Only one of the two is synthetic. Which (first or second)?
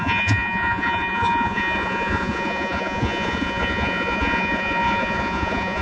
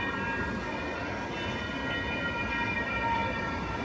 first